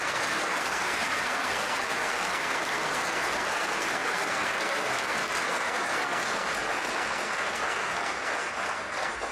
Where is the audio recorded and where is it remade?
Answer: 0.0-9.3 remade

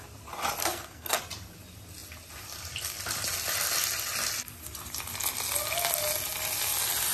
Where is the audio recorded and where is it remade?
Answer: 0.0-0.6 recorded; 0.6-1.2 remade; 1.2-7.1 recorded

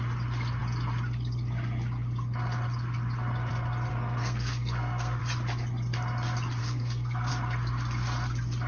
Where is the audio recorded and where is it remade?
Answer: 0.0-3.9 recorded; 3.9-5.2 remade; 5.2-6.6 recorded; 6.6-7.3 remade; 7.3-8.7 recorded

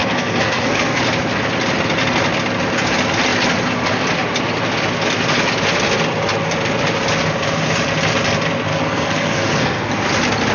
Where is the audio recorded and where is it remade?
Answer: 0.0-1.0 remade; 1.0-8.7 recorded; 8.7-9.9 remade; 9.9-10.5 recorded

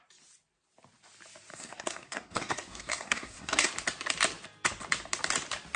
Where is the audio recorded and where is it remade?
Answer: 0.0-1.5 recorded; 1.5-3.7 remade; 3.7-5.8 recorded

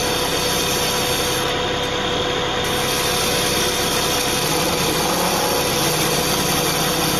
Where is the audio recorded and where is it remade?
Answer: 0.0-7.2 recorded